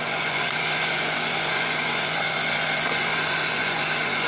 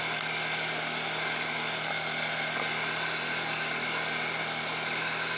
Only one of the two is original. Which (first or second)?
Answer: second